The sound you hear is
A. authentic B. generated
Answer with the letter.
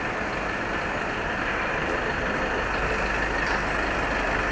B